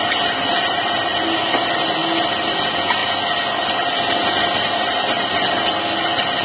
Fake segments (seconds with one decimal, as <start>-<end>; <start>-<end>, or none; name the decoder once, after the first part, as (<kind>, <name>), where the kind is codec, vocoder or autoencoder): none